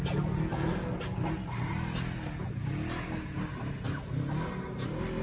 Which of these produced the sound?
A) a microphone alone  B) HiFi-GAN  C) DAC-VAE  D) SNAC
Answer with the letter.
A